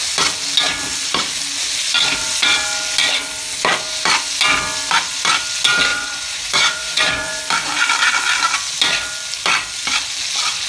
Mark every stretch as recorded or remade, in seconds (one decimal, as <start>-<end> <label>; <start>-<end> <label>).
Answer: 0.0-5.9 recorded; 5.9-7.4 remade; 7.4-10.7 recorded